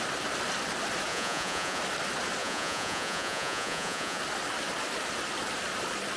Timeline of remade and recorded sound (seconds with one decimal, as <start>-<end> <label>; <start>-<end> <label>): 0.0-1.1 recorded; 1.1-1.8 remade; 1.8-2.4 recorded; 2.4-4.2 remade; 4.2-6.2 recorded